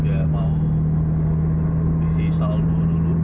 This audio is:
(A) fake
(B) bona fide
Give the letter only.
B